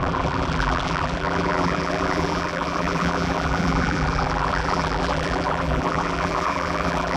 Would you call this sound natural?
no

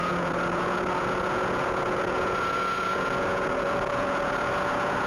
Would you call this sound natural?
no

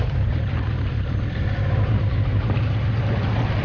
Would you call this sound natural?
yes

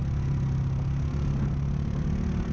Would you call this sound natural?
yes